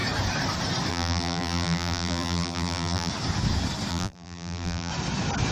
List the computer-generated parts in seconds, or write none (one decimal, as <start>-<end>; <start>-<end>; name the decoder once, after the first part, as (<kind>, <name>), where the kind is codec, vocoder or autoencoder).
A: 0.9-3.1 (vocoder, BigVGAN v2); 3.9-4.9